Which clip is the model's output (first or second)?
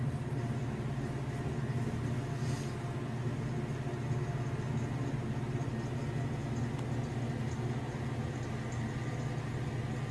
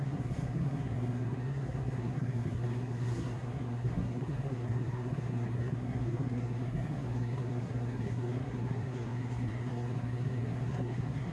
second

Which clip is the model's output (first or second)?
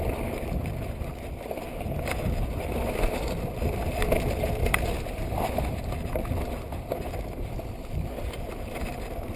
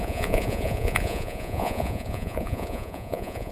second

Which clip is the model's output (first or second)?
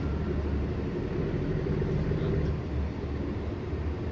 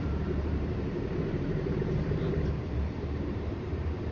second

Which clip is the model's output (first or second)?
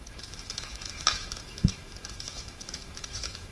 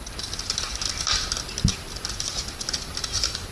first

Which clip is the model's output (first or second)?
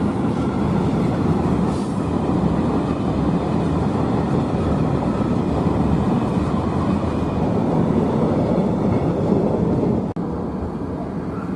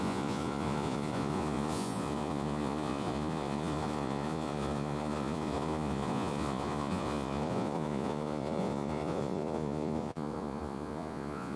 second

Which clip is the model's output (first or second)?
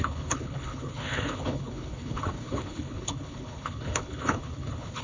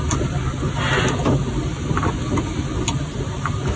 first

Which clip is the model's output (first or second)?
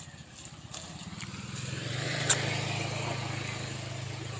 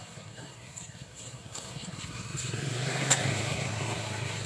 second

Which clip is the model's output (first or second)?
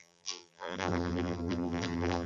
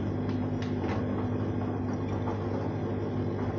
first